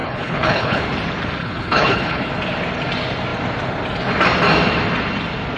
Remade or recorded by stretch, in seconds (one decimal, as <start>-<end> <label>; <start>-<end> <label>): 0.0-0.8 remade; 0.8-1.4 recorded; 1.4-2.3 remade; 2.3-5.6 recorded